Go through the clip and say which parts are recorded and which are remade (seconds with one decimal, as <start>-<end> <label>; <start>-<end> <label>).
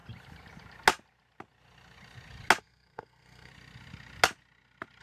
0.0-2.6 recorded; 2.6-3.5 remade; 3.5-5.0 recorded